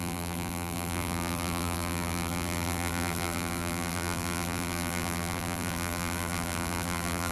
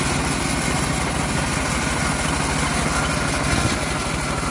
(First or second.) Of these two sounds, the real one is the second